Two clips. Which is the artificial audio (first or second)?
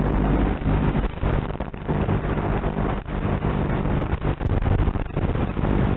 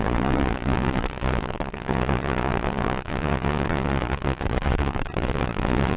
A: second